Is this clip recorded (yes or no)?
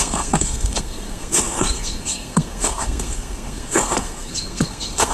no